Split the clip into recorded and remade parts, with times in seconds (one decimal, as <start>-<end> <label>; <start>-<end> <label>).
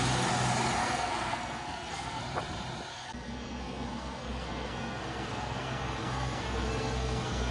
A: 0.0-0.8 recorded; 0.8-2.2 remade; 2.2-2.9 recorded; 2.9-7.5 remade